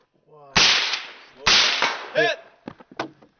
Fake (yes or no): no